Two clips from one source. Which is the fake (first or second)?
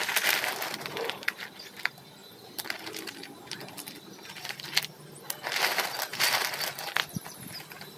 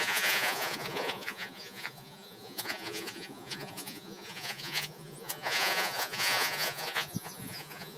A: second